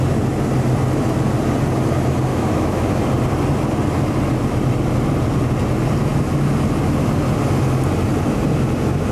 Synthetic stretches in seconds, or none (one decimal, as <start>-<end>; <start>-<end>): 2.3-2.9